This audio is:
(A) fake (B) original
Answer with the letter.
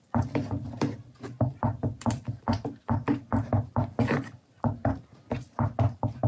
A